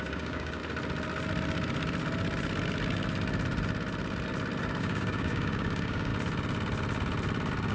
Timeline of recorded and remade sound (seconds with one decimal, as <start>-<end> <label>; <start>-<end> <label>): 0.0-0.6 remade; 0.6-4.8 recorded; 4.8-6.1 remade; 6.1-7.7 recorded